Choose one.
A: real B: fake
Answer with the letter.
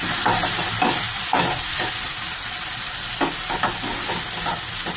A